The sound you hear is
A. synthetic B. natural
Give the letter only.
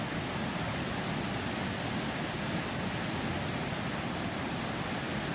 B